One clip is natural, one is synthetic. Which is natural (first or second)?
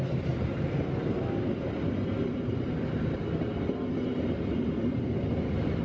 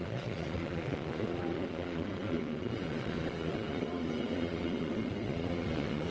first